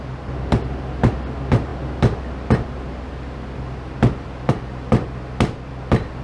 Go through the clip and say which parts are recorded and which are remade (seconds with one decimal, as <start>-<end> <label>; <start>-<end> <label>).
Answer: 0.0-6.2 recorded